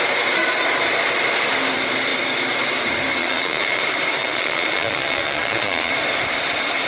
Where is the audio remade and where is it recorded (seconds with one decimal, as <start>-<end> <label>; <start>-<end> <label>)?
0.0-3.2 recorded; 3.2-3.8 remade; 3.8-4.2 recorded; 4.2-5.9 remade; 5.9-6.9 recorded

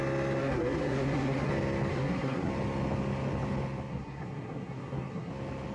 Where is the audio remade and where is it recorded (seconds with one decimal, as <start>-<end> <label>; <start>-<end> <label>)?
0.0-0.4 recorded; 0.4-1.5 remade; 1.5-1.9 recorded; 1.9-2.5 remade; 2.5-3.9 recorded; 3.9-5.3 remade; 5.3-5.7 recorded

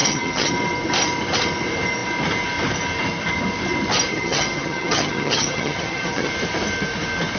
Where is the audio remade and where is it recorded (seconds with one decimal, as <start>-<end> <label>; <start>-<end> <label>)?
0.0-0.5 remade; 0.5-4.1 recorded; 4.1-6.3 remade; 6.3-7.4 recorded

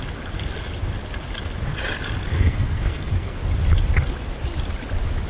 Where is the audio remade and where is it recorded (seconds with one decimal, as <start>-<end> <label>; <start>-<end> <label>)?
0.0-2.3 recorded; 2.3-3.4 remade; 3.4-5.3 recorded

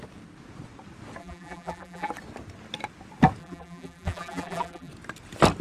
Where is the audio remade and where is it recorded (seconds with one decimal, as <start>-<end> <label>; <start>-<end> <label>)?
0.0-1.2 recorded; 1.2-2.1 remade; 2.1-3.4 recorded; 3.4-4.9 remade; 4.9-5.6 recorded